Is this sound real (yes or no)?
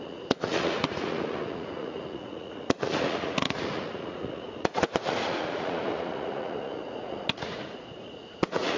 no